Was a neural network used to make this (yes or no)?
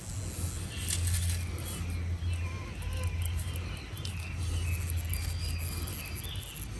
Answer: no